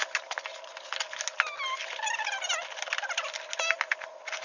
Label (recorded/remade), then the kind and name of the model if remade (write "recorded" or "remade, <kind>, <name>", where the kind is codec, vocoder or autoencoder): recorded